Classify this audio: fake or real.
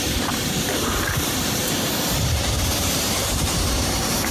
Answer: fake